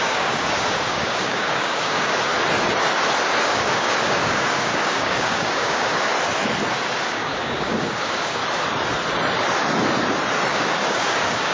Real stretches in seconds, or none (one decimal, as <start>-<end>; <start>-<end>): 2.3-3.4; 6.1-6.7; 8.4-10.5